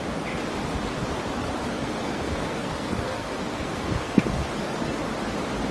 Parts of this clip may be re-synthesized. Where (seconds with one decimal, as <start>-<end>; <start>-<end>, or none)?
1.7-4.5